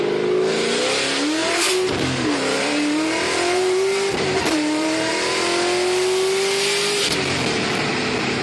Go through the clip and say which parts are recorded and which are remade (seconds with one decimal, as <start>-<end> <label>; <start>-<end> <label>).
0.0-1.4 recorded; 1.4-5.1 remade; 5.1-8.4 recorded